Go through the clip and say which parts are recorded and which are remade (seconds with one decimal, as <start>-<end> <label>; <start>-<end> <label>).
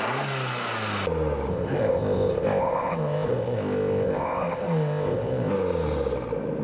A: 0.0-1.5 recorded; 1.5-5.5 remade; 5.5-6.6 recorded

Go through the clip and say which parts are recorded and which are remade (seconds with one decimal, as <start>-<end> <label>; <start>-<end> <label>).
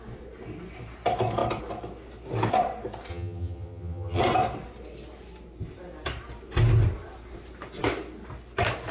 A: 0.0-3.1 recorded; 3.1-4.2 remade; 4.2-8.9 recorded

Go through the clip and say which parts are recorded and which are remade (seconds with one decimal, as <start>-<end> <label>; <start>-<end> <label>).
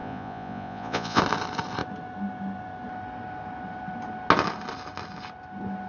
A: 0.0-1.2 remade; 1.2-5.9 recorded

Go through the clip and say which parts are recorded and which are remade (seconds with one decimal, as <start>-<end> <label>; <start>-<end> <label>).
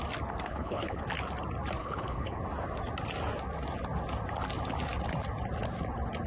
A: 0.0-0.5 recorded; 0.5-1.0 remade; 1.0-1.8 recorded; 1.8-2.4 remade; 2.4-6.3 recorded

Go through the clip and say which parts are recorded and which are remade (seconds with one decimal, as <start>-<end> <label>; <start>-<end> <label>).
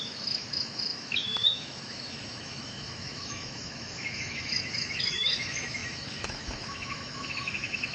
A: 0.0-7.9 remade